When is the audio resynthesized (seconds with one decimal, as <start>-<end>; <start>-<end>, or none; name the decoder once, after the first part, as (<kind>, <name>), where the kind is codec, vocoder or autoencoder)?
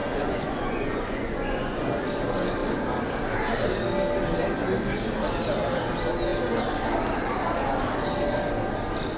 0.0-1.9 (vocoder, Vocos)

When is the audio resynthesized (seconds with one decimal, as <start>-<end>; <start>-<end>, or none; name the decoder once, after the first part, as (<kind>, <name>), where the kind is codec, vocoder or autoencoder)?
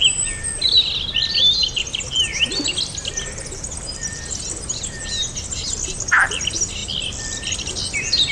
none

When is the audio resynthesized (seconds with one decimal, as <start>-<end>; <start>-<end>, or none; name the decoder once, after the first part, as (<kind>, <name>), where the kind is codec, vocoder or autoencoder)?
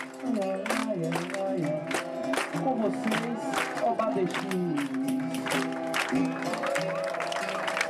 none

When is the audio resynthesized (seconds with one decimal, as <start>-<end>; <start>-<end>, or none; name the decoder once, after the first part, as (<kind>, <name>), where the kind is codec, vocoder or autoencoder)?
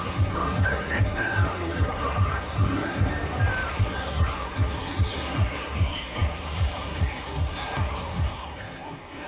0.0-3.1 (codec, SNAC); 3.7-9.3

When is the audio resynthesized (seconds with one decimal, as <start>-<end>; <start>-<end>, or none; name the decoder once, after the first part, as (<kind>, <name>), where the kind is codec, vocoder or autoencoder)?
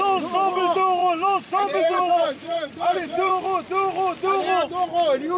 1.0-3.4 (vocoder, Vocos)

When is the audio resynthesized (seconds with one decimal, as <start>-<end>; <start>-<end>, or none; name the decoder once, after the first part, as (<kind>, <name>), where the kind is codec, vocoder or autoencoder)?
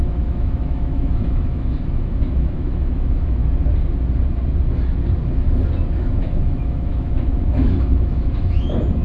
0.0-3.4 (autoencoder, DAC-VAE); 6.0-9.0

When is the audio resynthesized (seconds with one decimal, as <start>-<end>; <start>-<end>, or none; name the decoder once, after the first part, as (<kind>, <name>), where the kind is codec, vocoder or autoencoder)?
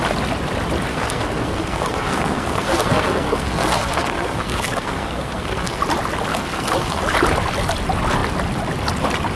0.9-5.8 (codec, SNAC); 6.3-7.0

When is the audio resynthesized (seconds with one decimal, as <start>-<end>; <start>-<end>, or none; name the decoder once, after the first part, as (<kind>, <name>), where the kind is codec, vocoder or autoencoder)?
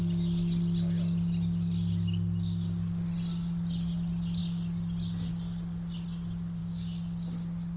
none